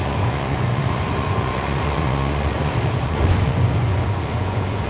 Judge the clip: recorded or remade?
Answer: remade